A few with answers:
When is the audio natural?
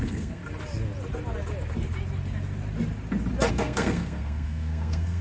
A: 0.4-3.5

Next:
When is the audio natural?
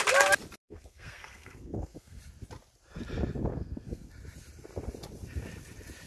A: 0.0-0.6; 2.2-3.5; 4.1-6.1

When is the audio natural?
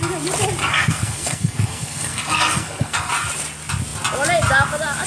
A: 0.0-0.6; 3.1-5.1